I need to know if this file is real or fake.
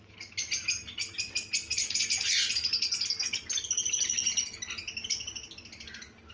real